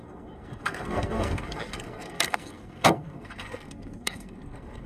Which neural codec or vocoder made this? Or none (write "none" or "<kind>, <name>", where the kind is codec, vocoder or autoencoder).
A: codec, SNAC